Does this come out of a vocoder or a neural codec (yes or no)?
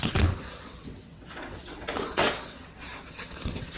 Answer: yes